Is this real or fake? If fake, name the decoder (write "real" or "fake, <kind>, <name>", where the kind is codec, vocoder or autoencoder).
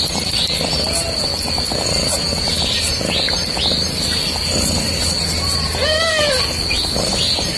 real